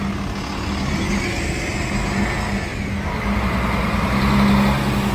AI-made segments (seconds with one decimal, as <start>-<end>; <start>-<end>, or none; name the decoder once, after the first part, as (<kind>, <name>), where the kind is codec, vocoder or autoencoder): none